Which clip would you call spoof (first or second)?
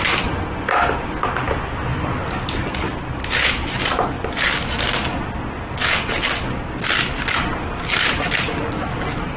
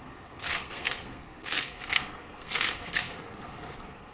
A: second